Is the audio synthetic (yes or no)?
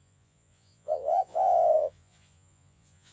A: yes